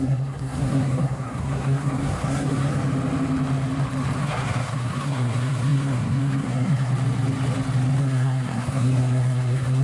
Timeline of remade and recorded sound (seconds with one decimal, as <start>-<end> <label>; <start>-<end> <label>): 0.0-2.7 remade; 2.7-4.2 recorded; 4.2-6.9 remade; 6.9-8.0 recorded; 8.0-9.8 remade